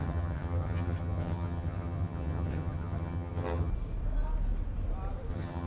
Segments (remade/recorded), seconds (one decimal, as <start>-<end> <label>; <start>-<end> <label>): 0.0-3.7 remade; 3.7-5.3 recorded; 5.3-5.7 remade

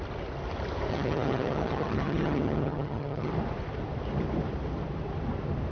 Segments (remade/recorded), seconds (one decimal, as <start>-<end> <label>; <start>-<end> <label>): 0.0-0.9 recorded; 0.9-3.3 remade; 3.3-5.7 recorded

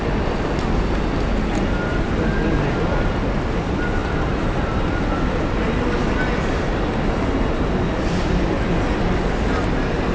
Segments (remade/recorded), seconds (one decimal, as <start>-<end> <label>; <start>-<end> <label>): 0.0-10.1 recorded

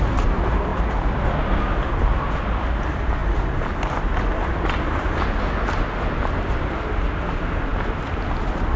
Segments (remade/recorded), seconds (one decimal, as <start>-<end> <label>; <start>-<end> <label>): 0.0-8.8 recorded